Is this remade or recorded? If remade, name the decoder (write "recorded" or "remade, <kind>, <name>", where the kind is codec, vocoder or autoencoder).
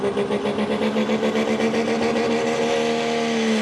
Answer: recorded